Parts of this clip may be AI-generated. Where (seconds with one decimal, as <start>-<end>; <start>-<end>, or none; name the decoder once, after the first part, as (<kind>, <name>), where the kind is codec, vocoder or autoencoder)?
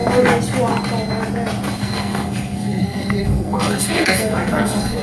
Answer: 1.8-5.0 (codec, SNAC)